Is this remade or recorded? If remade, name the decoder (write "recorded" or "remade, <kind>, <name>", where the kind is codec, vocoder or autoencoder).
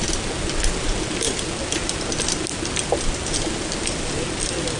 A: recorded